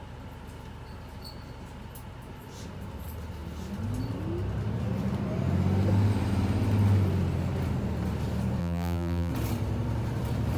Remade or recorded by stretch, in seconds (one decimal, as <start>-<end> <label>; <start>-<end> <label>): 0.0-8.6 recorded; 8.6-9.3 remade; 9.3-10.6 recorded